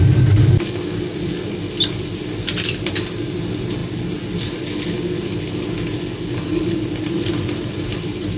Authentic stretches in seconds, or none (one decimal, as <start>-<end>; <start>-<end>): 0.0-8.4